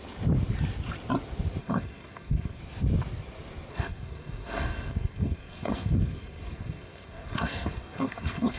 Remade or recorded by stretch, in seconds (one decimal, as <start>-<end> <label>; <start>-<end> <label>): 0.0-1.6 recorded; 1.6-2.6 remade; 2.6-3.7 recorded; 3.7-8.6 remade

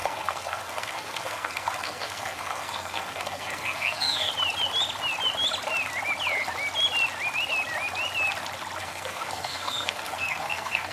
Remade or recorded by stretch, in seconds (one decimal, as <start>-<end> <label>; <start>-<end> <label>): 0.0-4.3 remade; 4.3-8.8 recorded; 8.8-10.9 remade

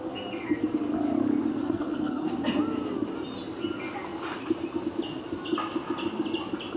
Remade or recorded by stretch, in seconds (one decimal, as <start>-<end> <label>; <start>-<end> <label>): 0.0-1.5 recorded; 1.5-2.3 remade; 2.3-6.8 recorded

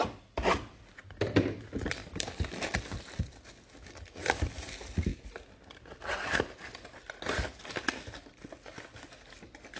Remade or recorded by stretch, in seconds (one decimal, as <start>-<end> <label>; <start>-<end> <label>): 0.0-9.8 recorded